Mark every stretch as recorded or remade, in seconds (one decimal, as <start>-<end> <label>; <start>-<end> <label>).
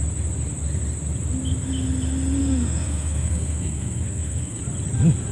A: 0.0-2.4 recorded; 2.4-4.6 remade; 4.6-5.3 recorded